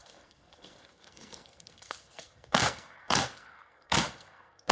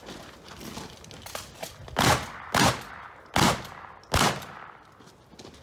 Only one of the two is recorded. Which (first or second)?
second